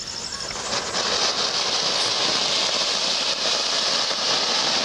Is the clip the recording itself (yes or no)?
yes